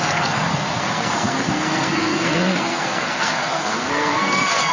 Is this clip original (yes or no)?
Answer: no